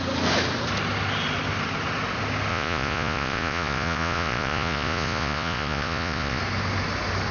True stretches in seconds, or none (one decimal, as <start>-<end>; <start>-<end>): 0.0-2.5; 6.4-7.3